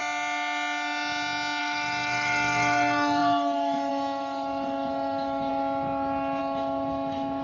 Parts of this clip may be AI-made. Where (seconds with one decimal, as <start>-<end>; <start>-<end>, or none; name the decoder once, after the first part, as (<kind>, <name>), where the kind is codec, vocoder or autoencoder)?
1.6-5.5 (autoencoder, DAC-VAE); 6.4-7.4